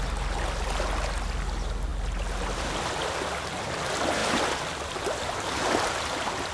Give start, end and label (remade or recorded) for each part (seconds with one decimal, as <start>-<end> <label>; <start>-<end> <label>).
0.0-6.5 recorded